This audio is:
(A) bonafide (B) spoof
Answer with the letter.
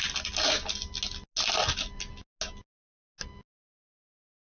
A